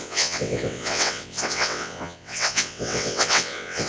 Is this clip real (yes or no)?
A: no